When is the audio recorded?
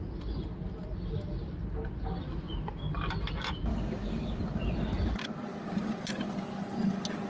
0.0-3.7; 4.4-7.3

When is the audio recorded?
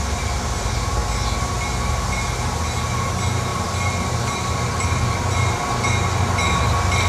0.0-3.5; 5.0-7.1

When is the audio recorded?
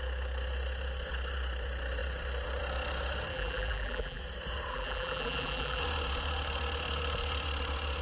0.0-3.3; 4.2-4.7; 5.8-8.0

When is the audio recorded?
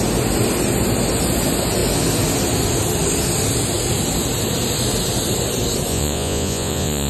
0.0-5.9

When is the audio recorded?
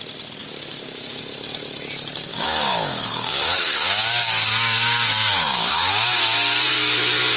0.0-0.4; 1.2-2.3; 6.7-7.4